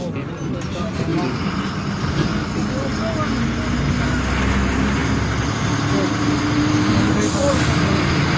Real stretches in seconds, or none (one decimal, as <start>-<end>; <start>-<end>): 0.0-8.4